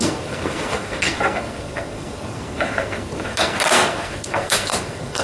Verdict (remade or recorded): remade